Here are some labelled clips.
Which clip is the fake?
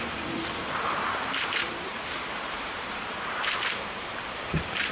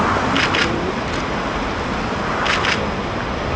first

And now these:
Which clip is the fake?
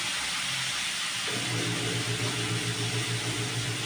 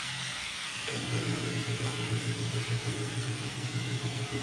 second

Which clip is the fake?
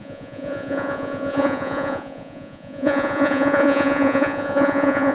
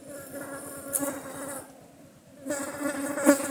first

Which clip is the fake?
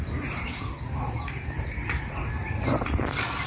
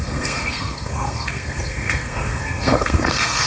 second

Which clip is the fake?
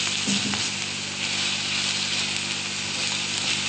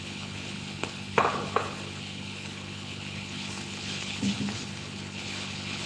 second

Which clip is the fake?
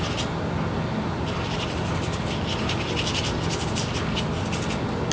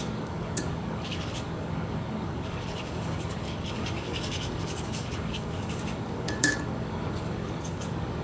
second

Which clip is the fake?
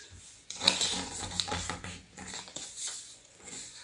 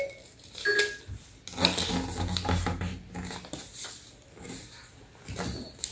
first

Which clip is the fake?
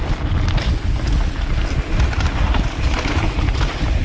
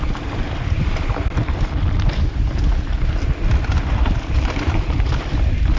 second